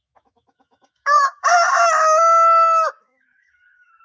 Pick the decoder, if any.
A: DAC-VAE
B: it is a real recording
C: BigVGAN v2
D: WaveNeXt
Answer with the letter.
A